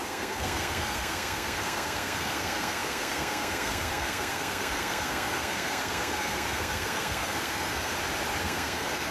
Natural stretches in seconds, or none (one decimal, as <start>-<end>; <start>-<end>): 7.9-8.4